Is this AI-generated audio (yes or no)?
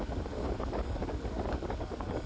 yes